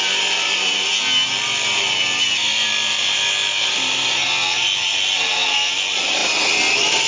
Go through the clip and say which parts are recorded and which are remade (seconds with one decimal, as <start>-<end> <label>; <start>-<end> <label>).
0.0-7.1 recorded